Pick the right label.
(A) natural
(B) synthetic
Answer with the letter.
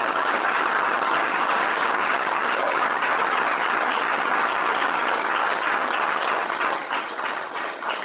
B